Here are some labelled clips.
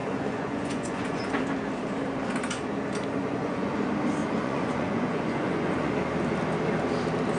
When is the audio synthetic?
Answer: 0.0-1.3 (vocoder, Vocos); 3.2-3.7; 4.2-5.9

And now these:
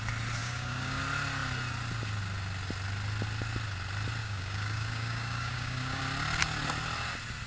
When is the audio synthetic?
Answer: 0.4-1.0 (codec, DAC); 4.2-6.0

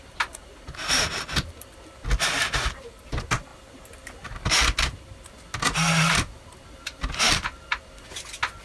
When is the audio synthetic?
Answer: none